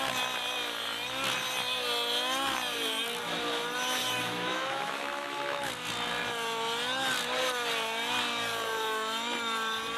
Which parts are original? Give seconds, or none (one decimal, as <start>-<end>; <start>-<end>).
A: 0.0-4.0; 5.7-10.0